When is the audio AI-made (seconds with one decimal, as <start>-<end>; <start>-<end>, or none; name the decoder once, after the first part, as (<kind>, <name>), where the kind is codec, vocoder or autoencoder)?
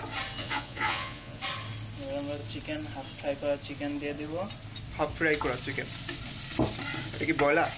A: 0.4-1.4 (vocoder, Vocos)